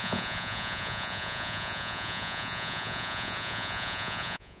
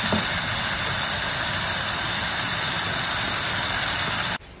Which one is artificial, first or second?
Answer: first